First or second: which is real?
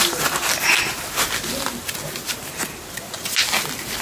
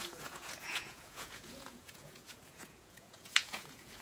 first